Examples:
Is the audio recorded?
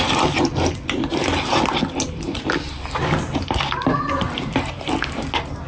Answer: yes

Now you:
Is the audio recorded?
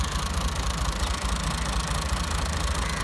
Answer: yes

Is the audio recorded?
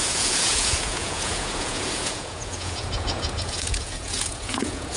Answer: no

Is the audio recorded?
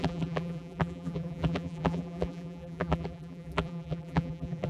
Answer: no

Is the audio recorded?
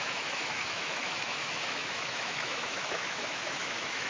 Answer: no